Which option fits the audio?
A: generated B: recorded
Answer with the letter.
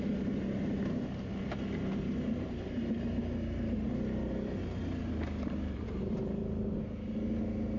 B